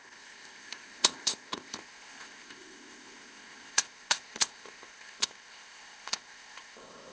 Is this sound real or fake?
fake